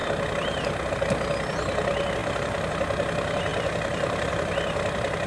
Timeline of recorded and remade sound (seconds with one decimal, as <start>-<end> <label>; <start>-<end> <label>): 0.0-2.2 recorded; 2.2-2.7 remade; 2.7-3.5 recorded; 3.5-4.3 remade; 4.3-5.3 recorded